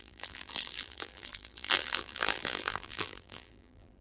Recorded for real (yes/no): no